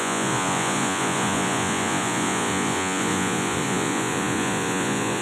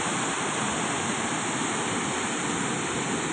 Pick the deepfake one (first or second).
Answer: first